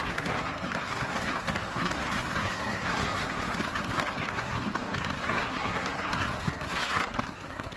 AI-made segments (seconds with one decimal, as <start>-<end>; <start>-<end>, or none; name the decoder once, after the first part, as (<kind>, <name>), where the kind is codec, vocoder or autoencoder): 0.0-7.8 (codec, SNAC)